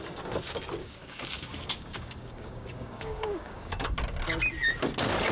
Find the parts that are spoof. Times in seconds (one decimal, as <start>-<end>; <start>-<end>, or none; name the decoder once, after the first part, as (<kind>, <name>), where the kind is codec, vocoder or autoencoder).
0.8-4.0 (codec, DAC)